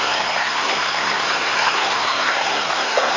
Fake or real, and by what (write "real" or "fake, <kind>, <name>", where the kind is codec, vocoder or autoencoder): fake, codec, SNAC